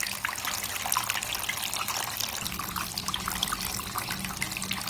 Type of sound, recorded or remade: recorded